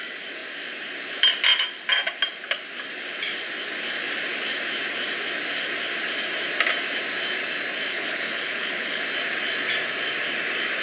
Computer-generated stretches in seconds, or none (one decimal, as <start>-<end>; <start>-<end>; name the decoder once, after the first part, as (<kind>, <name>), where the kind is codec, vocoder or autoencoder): 7.9-9.0 (codec, HILCodec)